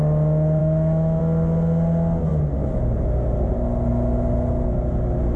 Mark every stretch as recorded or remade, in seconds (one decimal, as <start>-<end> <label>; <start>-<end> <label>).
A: 0.0-0.6 recorded; 0.6-1.2 remade; 1.2-5.4 recorded